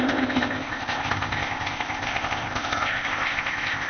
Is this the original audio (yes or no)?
no